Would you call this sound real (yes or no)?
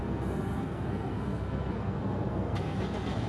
no